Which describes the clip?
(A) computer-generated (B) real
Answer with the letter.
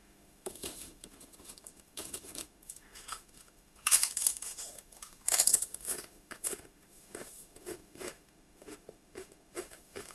A